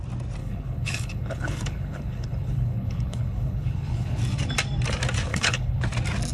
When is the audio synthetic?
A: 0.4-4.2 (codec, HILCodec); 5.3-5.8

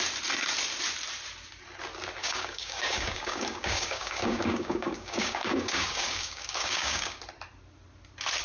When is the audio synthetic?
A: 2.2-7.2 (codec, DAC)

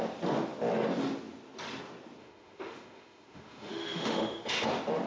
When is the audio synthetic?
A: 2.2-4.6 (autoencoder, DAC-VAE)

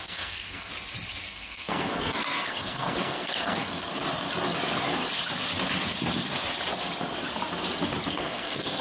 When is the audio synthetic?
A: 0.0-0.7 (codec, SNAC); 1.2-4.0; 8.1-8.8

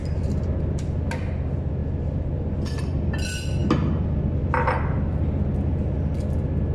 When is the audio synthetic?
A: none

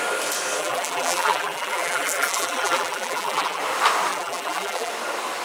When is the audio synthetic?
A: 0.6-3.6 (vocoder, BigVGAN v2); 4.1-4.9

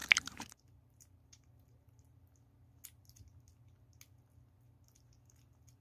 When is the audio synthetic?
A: 0.0-2.2 (vocoder, BigVGAN v2)